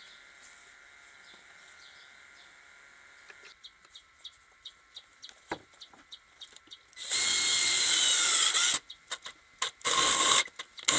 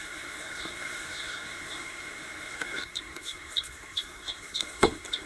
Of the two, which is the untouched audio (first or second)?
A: first